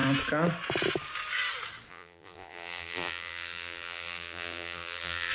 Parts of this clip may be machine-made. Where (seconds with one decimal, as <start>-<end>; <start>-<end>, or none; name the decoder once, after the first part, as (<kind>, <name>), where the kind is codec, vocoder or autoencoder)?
1.9-5.3 (vocoder, BigVGAN v2)